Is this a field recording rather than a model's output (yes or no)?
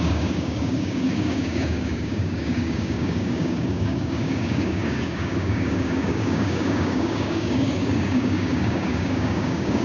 no